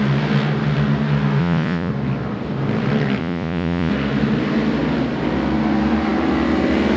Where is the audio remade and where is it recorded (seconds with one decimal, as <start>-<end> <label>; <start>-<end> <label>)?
0.0-1.4 recorded; 1.4-1.9 remade; 1.9-3.2 recorded; 3.2-3.9 remade; 3.9-7.0 recorded